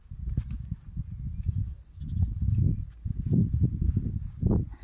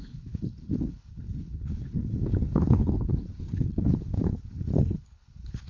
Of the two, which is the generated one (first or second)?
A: second